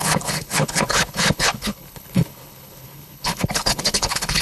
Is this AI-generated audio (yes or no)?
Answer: yes